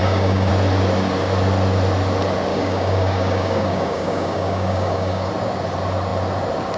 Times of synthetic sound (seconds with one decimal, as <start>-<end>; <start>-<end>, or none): 0.0-0.5; 2.5-5.3